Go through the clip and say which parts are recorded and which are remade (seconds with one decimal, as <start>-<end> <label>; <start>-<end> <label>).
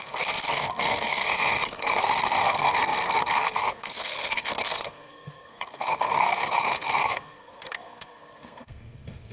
0.0-9.3 remade